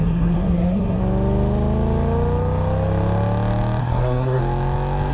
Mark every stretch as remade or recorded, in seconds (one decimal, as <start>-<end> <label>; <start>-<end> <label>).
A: 0.0-1.0 remade; 1.0-3.8 recorded; 3.8-4.4 remade; 4.4-5.1 recorded